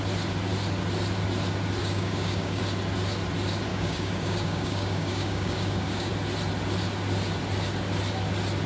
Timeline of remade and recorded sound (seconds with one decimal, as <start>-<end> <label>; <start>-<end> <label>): 0.0-1.8 recorded; 1.8-2.6 remade; 2.6-3.7 recorded; 3.7-6.1 remade; 6.1-8.7 recorded